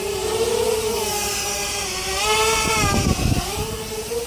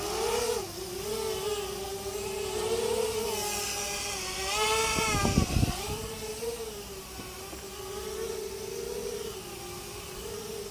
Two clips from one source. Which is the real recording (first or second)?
second